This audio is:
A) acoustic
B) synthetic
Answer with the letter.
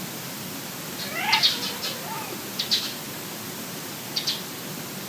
A